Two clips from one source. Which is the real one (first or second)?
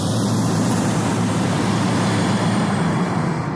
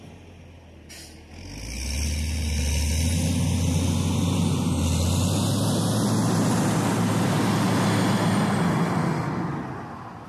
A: second